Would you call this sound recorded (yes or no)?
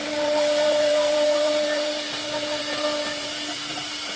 no